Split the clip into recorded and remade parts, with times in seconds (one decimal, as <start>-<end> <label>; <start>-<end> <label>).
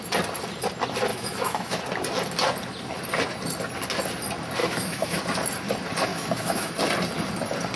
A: 0.0-1.1 recorded; 1.1-1.8 remade; 1.8-4.6 recorded; 4.6-5.2 remade; 5.2-6.1 recorded; 6.1-6.7 remade; 6.7-7.8 recorded